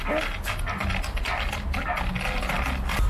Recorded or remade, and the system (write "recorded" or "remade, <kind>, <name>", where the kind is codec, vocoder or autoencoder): recorded